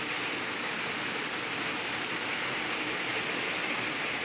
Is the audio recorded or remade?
recorded